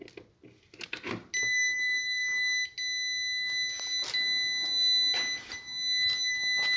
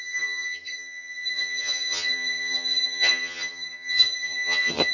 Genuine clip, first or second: first